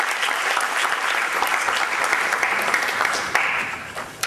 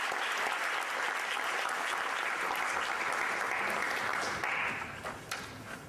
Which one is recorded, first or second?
second